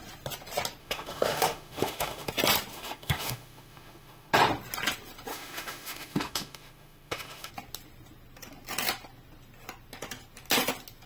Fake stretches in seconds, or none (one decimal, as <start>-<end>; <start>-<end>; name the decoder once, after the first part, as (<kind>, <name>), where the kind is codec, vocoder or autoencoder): 0.8-2.3 (autoencoder, DAC-VAE); 2.7-4.3; 5.3-7.5